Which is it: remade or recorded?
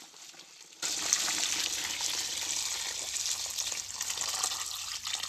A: recorded